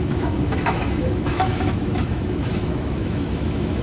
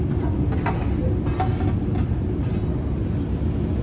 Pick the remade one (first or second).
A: first